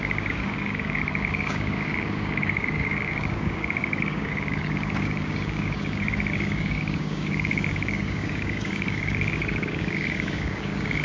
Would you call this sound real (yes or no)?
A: no